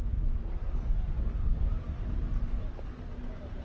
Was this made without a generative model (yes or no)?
yes